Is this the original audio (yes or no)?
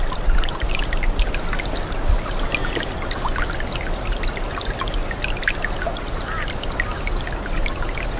yes